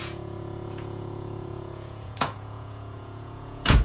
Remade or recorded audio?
remade